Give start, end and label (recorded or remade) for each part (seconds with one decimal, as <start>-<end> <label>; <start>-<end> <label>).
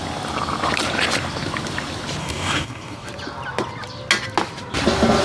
0.0-2.2 recorded; 2.2-3.1 remade; 3.1-5.2 recorded